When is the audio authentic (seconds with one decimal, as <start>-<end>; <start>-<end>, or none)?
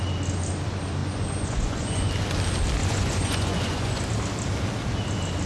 0.0-1.0; 2.1-2.8; 4.0-5.5